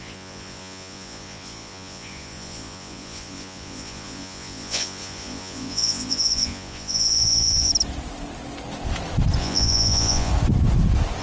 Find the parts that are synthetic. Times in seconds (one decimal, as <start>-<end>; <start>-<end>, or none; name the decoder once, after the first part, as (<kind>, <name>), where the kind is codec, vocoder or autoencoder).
0.0-7.7 (vocoder, Vocos); 9.4-10.3